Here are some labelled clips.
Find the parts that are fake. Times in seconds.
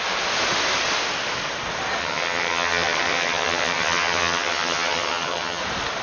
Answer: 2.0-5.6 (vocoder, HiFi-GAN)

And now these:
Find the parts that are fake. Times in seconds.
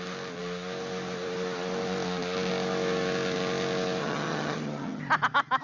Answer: 4.0-5.0 (vocoder, HiFi-GAN)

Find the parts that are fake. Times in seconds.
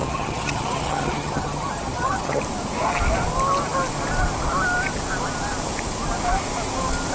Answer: 0.0-2.4 (vocoder, HiFi-GAN)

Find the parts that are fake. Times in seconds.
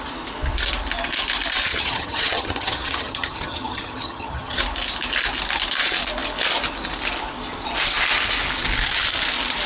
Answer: 1.7-4.6 (vocoder, HiFi-GAN)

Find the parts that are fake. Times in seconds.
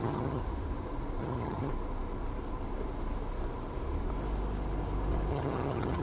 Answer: 0.0-0.4 (vocoder, HiFi-GAN); 1.2-1.7; 5.3-6.0